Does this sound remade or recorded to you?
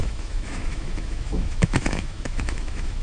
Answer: remade